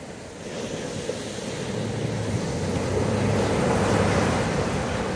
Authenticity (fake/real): real